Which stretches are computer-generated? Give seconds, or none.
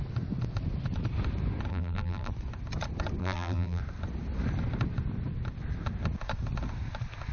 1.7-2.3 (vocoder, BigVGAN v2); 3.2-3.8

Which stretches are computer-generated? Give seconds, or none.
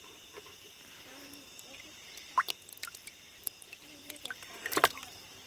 0.0-2.1 (vocoder, BigVGAN v2); 3.3-5.5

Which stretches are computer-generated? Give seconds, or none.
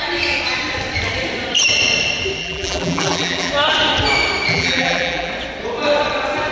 2.4-3.5 (vocoder, BigVGAN v2); 4.5-5.3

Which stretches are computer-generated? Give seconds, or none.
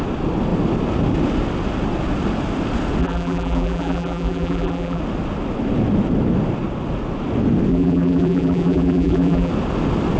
3.0-5.0 (vocoder, BigVGAN v2); 7.7-9.5